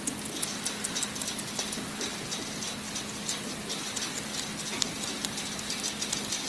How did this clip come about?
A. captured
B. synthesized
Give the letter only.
A